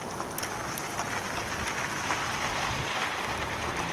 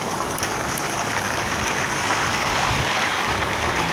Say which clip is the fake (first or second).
second